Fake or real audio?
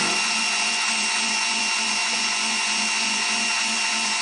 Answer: fake